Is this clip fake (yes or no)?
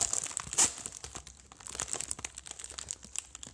no